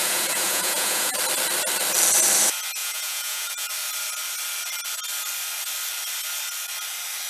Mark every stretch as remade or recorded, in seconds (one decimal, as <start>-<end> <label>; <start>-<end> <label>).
0.0-1.2 remade; 1.2-2.8 recorded; 2.8-3.7 remade; 3.7-7.3 recorded